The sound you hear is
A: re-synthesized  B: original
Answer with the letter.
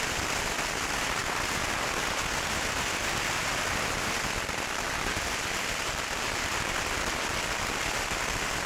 B